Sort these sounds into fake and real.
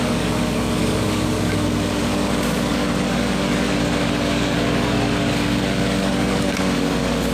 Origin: fake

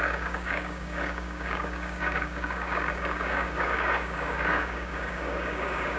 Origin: fake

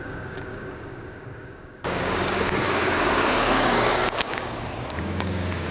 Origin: fake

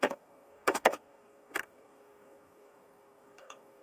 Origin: fake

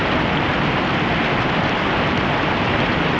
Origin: real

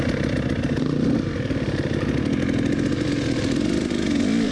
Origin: real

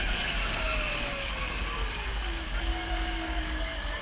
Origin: fake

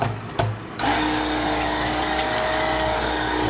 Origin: fake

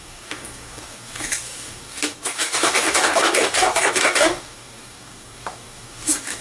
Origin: fake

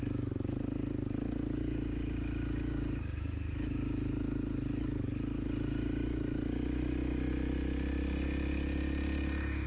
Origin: real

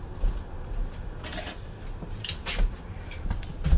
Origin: real